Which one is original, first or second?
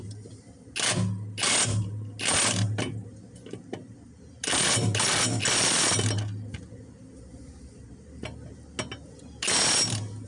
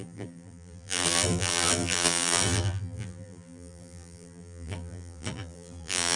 first